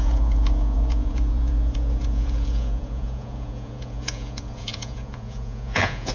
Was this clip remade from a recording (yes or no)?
yes